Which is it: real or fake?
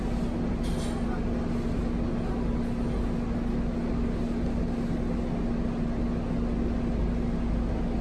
real